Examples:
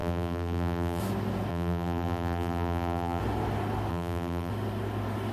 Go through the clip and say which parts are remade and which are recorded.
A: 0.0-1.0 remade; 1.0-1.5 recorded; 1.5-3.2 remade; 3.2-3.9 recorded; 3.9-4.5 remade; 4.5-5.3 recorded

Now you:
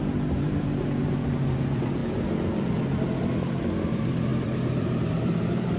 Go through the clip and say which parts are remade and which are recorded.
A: 0.0-2.0 remade; 2.0-3.2 recorded; 3.2-5.8 remade

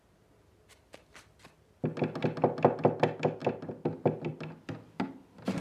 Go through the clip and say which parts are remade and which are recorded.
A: 0.0-5.6 recorded

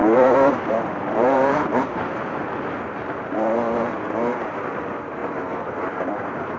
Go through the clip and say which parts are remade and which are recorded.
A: 0.0-6.6 remade

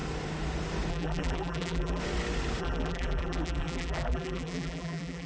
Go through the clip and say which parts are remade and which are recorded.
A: 0.0-0.9 recorded; 0.9-2.0 remade; 2.0-2.6 recorded; 2.6-5.3 remade

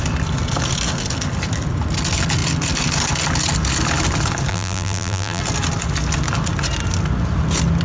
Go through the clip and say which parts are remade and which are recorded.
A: 0.0-4.5 recorded; 4.5-5.4 remade; 5.4-7.8 recorded